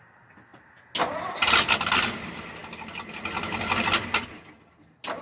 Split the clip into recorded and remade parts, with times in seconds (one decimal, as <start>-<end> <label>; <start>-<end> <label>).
0.0-5.2 recorded